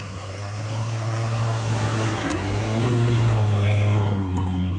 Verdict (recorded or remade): remade